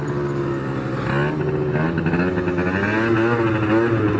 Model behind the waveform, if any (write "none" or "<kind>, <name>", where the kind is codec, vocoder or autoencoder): none